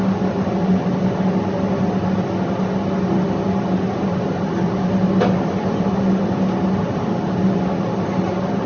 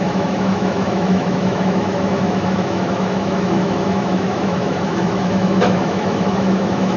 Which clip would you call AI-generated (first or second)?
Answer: second